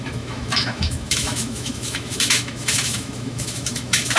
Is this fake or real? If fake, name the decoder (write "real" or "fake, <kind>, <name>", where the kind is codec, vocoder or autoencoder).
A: fake, autoencoder, DAC-VAE